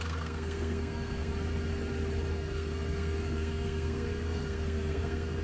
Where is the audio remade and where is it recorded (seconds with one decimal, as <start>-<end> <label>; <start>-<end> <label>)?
0.0-1.3 remade; 1.3-2.3 recorded; 2.3-5.4 remade